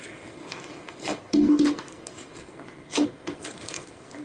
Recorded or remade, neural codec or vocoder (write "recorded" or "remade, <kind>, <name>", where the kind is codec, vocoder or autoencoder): remade, codec, SNAC